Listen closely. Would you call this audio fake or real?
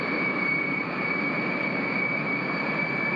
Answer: fake